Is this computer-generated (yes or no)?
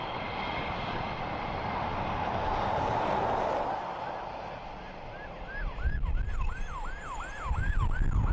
no